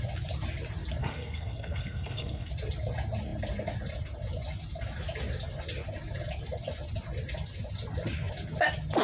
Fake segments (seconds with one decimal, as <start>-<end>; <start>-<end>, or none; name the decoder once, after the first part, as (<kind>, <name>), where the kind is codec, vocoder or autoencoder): 1.0-2.5 (codec, SNAC)